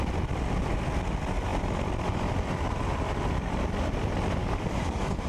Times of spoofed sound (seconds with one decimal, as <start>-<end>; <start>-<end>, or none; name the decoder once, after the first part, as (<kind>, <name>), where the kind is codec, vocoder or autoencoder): 4.4-5.3 (codec, DAC)